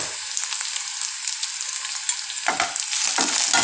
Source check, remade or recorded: recorded